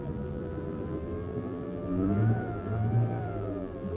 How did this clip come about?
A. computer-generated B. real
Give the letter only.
A